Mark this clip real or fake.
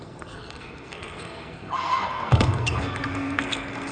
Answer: fake